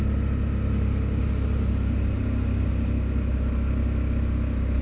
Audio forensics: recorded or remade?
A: recorded